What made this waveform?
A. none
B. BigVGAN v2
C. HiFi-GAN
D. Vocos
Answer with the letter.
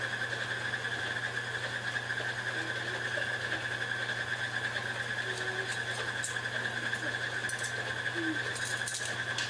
A